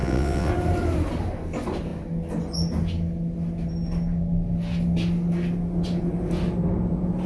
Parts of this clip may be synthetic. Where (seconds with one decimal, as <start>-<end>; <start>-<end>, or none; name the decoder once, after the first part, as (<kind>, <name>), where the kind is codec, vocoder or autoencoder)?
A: 0.0-0.5 (vocoder, WaveNeXt)